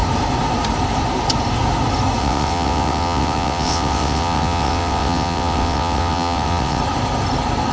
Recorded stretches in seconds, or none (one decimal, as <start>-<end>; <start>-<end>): 0.0-2.2; 6.8-7.7